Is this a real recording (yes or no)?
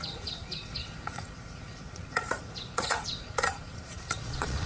no